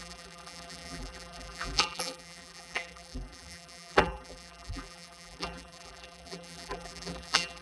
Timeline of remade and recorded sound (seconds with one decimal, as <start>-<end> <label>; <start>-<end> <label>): 0.0-7.6 remade